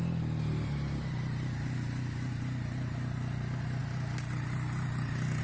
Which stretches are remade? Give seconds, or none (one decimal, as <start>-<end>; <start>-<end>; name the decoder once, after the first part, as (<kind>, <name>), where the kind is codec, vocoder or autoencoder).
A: none